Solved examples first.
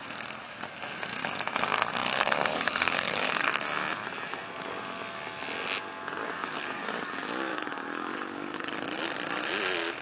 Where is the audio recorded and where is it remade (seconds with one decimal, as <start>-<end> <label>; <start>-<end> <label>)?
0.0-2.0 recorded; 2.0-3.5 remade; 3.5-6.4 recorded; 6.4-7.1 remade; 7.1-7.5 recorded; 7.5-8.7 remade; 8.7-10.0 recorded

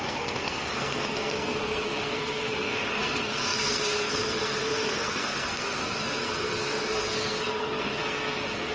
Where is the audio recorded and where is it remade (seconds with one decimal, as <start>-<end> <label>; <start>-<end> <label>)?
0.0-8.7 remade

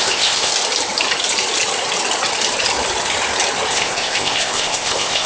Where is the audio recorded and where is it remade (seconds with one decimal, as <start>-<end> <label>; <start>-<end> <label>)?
0.0-0.5 remade; 0.5-3.7 recorded; 3.7-5.3 remade